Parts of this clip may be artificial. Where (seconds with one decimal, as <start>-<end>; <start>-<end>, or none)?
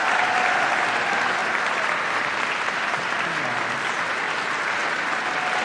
none